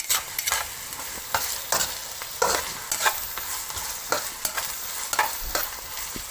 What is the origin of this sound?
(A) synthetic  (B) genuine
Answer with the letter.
B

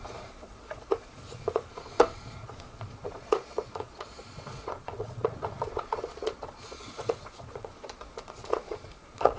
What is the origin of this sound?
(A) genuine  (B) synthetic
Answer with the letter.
B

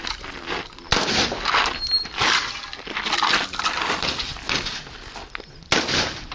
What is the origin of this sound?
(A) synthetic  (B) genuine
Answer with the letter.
B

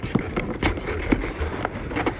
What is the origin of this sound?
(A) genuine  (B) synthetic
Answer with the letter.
A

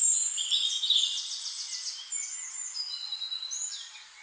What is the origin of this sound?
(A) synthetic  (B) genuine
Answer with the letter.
B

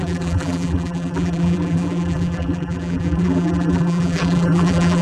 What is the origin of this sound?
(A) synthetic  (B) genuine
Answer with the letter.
A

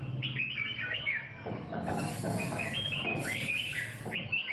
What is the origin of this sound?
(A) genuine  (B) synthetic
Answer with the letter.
B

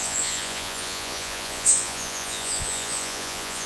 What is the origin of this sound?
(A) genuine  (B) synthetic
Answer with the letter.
B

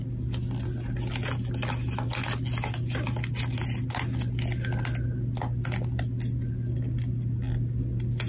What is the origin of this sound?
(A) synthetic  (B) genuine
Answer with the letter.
B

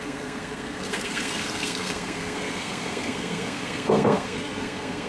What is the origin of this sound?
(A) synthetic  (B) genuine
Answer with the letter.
A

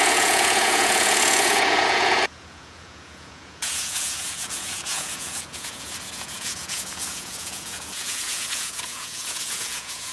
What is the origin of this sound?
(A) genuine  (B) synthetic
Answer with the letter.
B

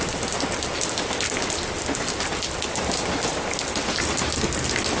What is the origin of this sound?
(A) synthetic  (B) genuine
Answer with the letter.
B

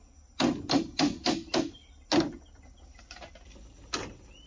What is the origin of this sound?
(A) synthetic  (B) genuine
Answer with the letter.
B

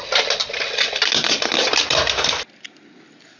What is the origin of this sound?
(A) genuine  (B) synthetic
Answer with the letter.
A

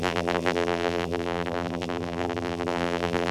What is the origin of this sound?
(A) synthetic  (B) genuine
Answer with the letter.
A